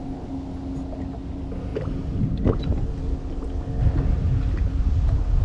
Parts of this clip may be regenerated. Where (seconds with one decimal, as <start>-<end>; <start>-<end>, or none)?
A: none